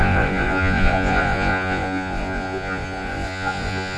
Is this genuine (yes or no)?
no